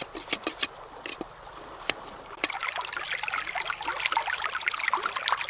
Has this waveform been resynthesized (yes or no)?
no